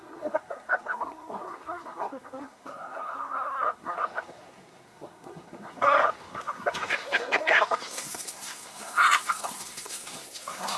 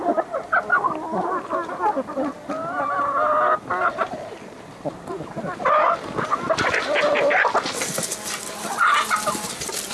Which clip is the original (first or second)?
second